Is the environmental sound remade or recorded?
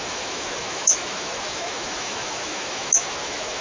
remade